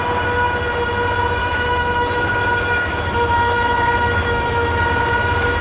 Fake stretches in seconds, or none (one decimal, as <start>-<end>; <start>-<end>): 1.4-4.8